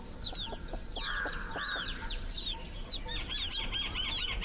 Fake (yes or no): no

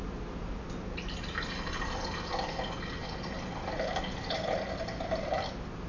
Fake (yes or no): no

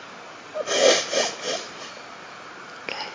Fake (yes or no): no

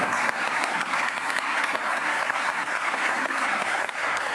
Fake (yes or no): yes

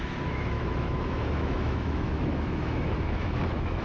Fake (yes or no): yes